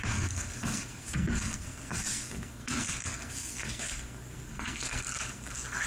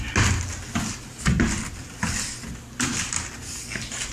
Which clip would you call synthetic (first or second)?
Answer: first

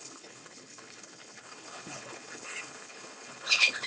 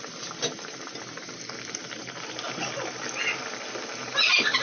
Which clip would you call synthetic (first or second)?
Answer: first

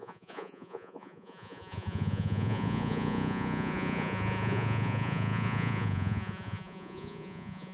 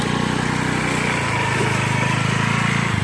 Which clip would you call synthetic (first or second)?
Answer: first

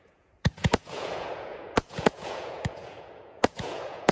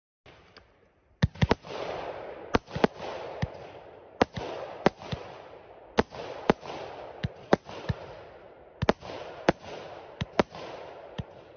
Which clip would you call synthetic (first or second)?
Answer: first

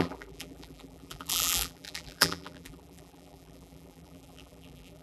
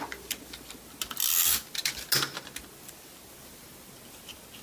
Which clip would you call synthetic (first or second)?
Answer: first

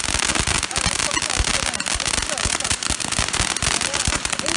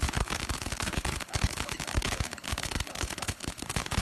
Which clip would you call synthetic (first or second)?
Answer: second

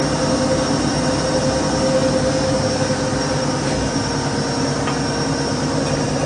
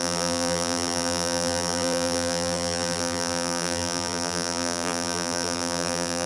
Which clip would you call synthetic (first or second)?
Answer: second